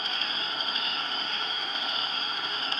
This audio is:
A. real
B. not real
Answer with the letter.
B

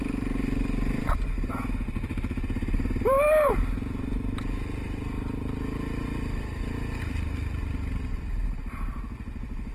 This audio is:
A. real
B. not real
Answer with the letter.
A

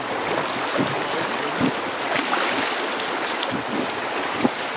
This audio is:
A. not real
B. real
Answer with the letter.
B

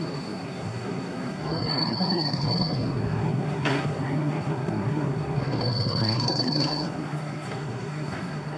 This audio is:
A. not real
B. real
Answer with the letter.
A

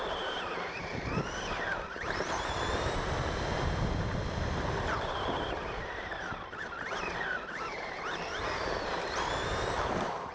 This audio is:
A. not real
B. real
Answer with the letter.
A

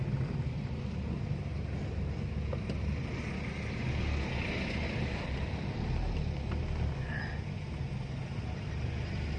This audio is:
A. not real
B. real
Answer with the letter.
B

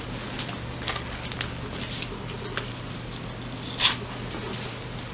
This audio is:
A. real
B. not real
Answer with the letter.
A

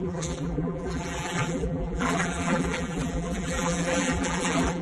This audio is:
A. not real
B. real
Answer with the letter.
A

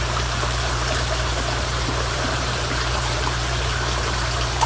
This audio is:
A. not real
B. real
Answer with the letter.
A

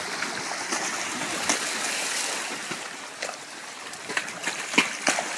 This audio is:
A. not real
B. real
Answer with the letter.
B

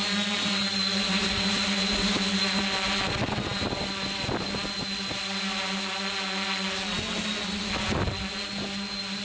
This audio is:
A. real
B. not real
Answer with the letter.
A